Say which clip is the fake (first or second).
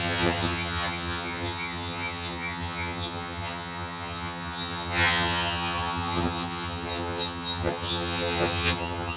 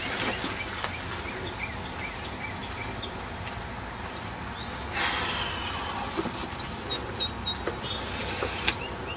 first